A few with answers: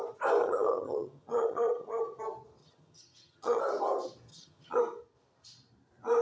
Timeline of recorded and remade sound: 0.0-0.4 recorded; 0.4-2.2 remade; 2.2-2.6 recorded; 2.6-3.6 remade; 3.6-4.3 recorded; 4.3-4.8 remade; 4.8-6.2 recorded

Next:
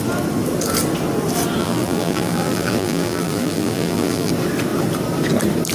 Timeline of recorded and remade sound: 0.0-1.6 recorded; 1.6-4.3 remade; 4.3-5.7 recorded

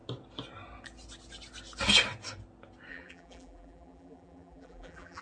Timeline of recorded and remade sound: 0.0-2.9 recorded; 2.9-5.2 remade

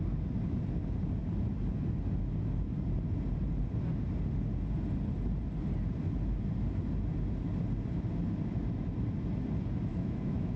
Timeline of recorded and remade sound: 0.0-9.9 recorded; 9.9-10.6 remade

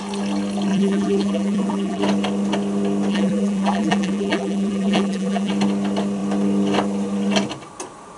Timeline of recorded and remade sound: 0.0-0.7 recorded; 0.7-2.0 remade; 2.0-3.1 recorded; 3.1-5.5 remade; 5.5-8.2 recorded

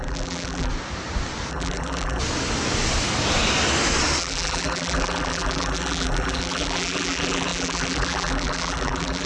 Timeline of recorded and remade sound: 0.0-0.7 remade; 0.7-1.5 recorded; 1.5-2.2 remade; 2.2-4.2 recorded; 4.2-9.3 remade